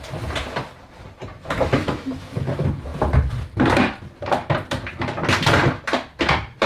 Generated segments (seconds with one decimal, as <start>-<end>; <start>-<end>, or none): 1.8-2.5